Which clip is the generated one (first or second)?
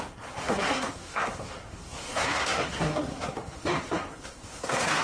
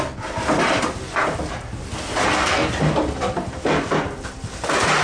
first